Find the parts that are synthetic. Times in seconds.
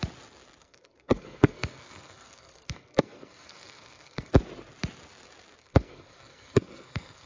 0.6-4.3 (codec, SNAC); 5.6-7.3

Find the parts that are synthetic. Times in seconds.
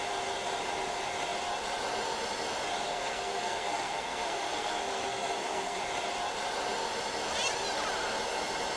2.9-5.8 (codec, SNAC)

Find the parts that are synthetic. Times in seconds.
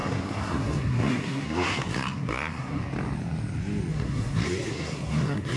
0.0-2.8 (codec, SNAC); 3.9-5.6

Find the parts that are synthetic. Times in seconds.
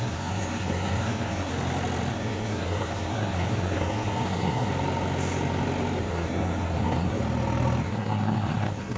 0.0-1.5 (codec, SNAC); 2.1-4.7; 6.0-7.2; 7.8-9.0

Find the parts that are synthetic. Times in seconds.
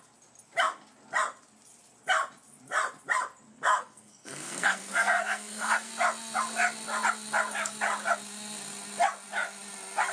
3.5-5.9 (codec, SNAC)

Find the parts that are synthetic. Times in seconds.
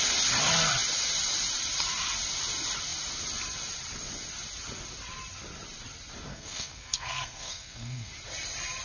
6.3-8.1 (codec, SNAC)